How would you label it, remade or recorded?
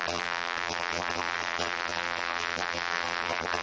remade